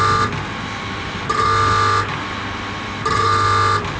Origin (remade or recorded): recorded